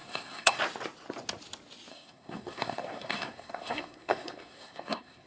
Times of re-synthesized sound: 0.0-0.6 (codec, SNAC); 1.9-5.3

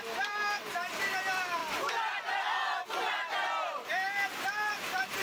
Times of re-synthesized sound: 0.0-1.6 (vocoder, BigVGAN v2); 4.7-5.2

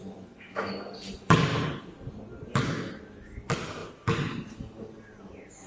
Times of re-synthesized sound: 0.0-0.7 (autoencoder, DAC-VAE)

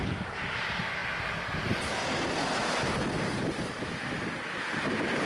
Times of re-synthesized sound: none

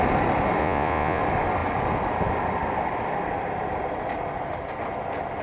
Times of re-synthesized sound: 0.6-1.2 (vocoder, Vocos)